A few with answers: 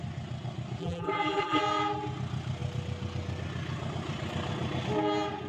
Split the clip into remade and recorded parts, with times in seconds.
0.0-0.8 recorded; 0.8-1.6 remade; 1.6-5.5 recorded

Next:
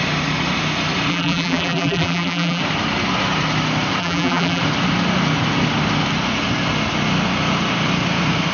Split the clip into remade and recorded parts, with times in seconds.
0.0-1.1 recorded; 1.1-2.6 remade; 2.6-4.0 recorded; 4.0-4.6 remade; 4.6-8.5 recorded

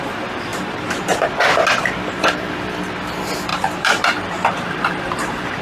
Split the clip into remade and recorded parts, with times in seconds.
0.0-0.5 recorded; 0.5-1.3 remade; 1.3-3.5 recorded; 3.5-5.6 remade

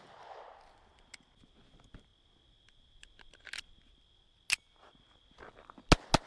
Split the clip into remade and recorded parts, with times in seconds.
0.0-6.3 recorded

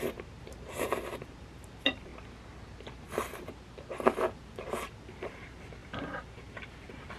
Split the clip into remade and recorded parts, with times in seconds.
0.0-2.1 remade; 2.1-4.2 recorded; 4.2-7.2 remade

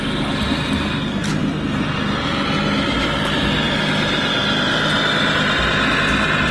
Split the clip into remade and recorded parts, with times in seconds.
0.0-6.5 recorded

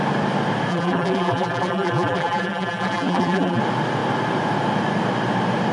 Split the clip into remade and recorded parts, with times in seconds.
0.0-0.7 recorded; 0.7-3.6 remade; 3.6-5.7 recorded

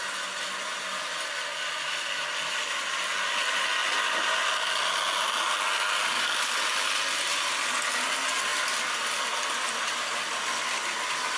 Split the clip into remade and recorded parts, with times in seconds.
0.0-3.8 recorded; 3.8-4.9 remade; 4.9-8.5 recorded; 8.5-9.3 remade; 9.3-11.4 recorded